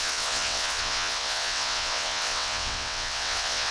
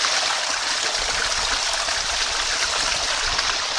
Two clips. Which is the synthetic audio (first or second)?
first